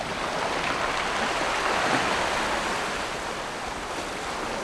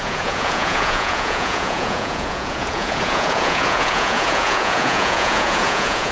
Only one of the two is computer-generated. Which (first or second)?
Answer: second